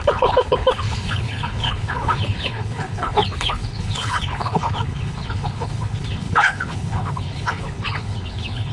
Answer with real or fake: fake